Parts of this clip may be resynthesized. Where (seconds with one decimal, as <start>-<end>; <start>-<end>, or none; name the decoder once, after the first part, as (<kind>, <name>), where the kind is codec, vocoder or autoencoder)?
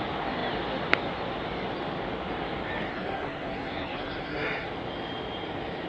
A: 2.9-4.7 (codec, SNAC)